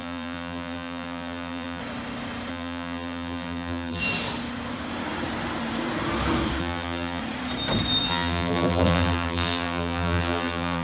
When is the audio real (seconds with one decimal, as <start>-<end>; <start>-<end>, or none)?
1.8-2.5; 4.0-6.6; 7.2-8.1